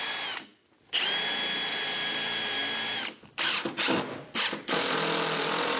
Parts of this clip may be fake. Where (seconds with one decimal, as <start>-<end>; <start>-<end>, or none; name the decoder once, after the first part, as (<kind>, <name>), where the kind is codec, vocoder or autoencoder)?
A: 0.0-0.5 (vocoder, BigVGAN v2); 1.7-5.8